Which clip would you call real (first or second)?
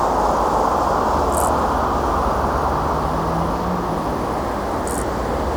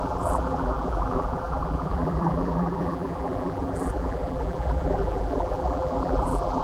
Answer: first